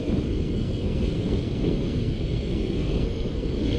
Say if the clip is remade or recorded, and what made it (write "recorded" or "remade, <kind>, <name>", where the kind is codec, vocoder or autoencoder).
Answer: remade, codec, SNAC